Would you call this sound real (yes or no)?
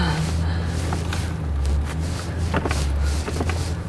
yes